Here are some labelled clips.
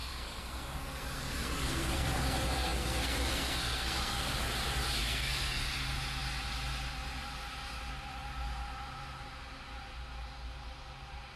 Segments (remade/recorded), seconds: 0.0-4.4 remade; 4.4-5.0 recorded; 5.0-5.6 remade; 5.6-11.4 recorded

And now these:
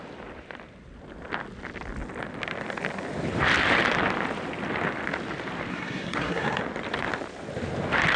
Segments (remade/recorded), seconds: 0.0-5.7 recorded; 5.7-6.6 remade; 6.6-8.2 recorded

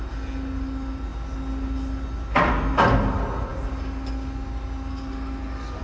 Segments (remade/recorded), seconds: 0.0-5.8 recorded

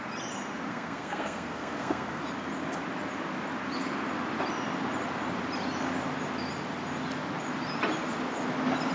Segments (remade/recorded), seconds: 0.0-0.7 recorded; 0.7-2.2 remade; 2.2-8.9 recorded

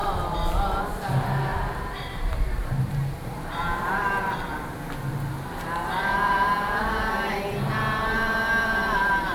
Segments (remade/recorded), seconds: 0.0-1.5 recorded; 1.5-3.6 remade; 3.6-9.3 recorded